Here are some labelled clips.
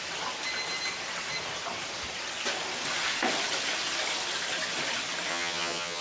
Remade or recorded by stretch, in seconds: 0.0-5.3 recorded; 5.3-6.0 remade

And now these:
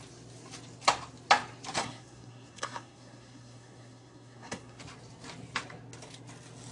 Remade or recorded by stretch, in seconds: 0.0-1.8 recorded; 1.8-4.8 remade; 4.8-6.7 recorded

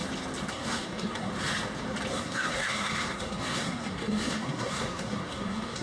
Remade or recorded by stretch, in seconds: 0.0-0.5 recorded; 0.5-1.3 remade; 1.3-2.1 recorded; 2.1-5.8 remade

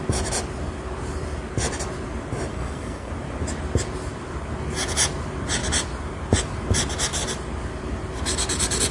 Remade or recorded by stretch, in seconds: 0.0-2.5 recorded; 2.5-3.1 remade; 3.1-8.9 recorded

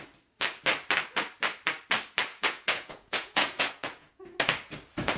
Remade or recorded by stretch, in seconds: 0.0-2.3 recorded; 2.3-4.2 remade; 4.2-5.2 recorded